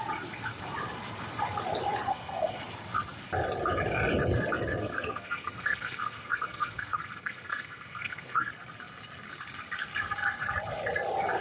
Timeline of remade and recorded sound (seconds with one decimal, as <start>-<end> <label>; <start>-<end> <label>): 0.0-2.1 recorded; 2.1-2.6 remade; 2.6-4.8 recorded; 4.8-8.5 remade; 8.5-11.4 recorded